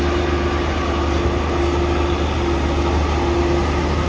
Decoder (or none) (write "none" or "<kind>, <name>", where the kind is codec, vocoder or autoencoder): none